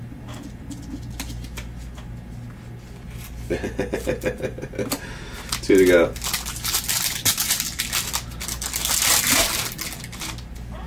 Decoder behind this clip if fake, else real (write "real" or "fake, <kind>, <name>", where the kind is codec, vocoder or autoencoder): real